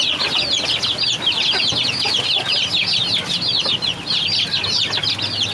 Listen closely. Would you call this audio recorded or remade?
recorded